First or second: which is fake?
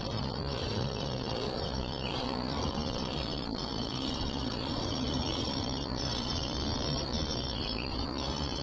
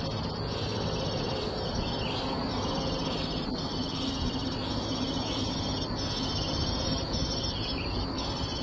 first